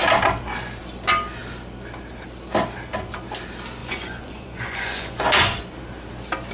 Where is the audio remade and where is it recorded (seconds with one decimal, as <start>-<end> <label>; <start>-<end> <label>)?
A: 0.0-3.8 recorded; 3.8-5.6 remade; 5.6-6.5 recorded